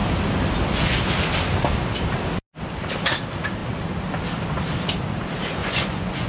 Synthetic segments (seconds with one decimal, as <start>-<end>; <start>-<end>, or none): 5.6-6.3